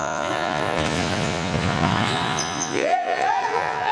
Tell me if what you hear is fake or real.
fake